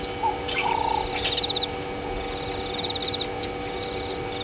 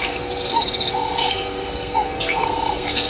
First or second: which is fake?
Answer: second